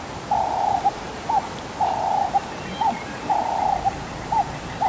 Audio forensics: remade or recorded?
remade